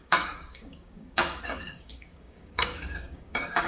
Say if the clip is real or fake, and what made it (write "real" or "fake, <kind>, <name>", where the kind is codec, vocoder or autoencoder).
fake, codec, DAC